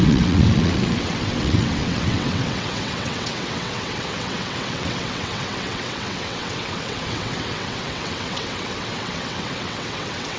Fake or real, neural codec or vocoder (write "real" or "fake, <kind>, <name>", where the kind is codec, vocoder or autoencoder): fake, vocoder, WaveNeXt